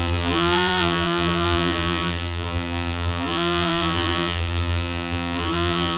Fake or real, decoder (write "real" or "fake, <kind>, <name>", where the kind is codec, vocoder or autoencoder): fake, vocoder, BigVGAN v2